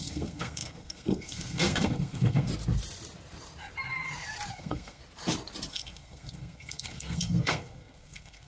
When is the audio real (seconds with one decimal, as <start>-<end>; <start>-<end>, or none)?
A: 2.5-4.5; 5.0-5.7